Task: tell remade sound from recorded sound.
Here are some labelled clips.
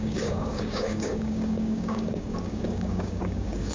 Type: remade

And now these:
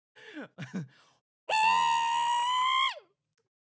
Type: recorded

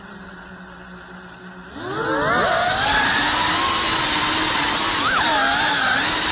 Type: recorded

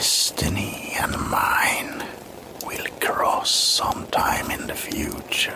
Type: recorded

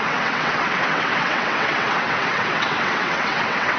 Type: remade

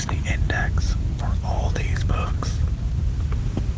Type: recorded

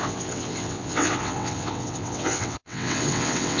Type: remade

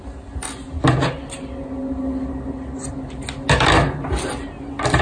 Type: recorded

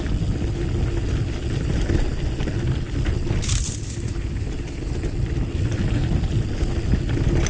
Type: recorded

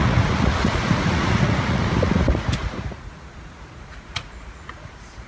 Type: remade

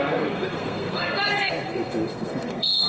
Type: remade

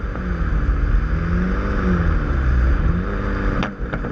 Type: recorded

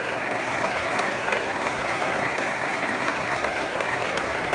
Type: remade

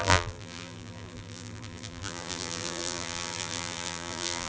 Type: remade